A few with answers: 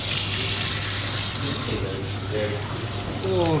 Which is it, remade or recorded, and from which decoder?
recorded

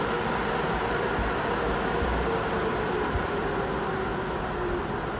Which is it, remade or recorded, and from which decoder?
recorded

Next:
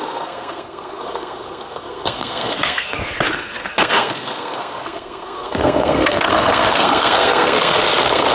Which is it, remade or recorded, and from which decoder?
remade, codec, SNAC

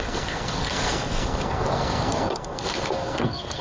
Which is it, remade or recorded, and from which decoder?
remade, codec, SNAC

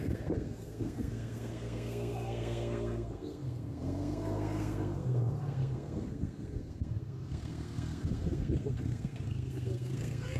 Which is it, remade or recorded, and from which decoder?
remade, codec, SNAC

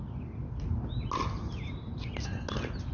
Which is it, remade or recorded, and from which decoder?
recorded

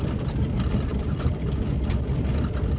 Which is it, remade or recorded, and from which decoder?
recorded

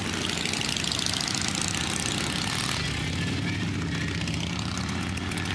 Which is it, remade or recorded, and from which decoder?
recorded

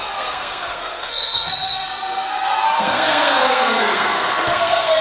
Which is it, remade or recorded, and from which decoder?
remade, codec, SNAC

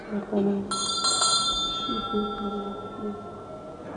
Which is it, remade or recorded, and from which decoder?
recorded